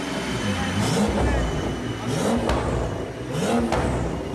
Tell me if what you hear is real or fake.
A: real